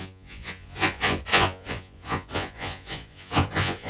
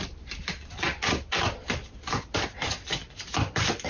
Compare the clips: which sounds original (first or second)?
second